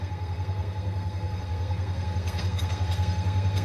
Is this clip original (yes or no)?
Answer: no